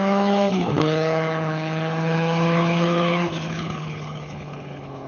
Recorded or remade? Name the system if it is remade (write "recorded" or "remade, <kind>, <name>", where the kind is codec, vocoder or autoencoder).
remade, codec, HILCodec